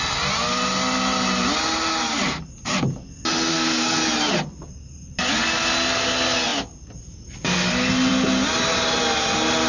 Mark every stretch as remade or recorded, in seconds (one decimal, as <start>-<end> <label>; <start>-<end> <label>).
0.0-3.5 recorded; 3.5-4.0 remade; 4.0-9.7 recorded